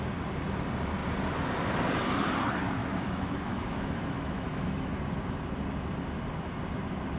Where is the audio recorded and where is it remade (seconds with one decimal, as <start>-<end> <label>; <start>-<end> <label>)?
0.0-2.8 recorded; 2.8-5.0 remade; 5.0-7.2 recorded